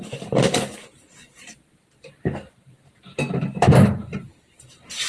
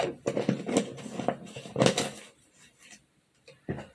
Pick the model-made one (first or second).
first